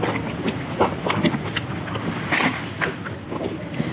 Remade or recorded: recorded